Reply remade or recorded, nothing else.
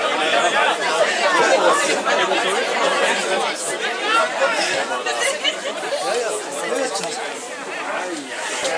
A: recorded